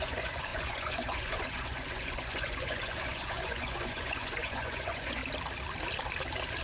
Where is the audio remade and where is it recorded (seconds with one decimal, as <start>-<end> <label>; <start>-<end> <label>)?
0.0-5.2 remade; 5.2-6.6 recorded